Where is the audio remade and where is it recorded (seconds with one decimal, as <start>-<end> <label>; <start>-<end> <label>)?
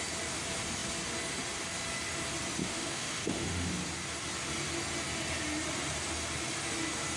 0.0-2.6 recorded; 2.6-3.7 remade; 3.7-7.2 recorded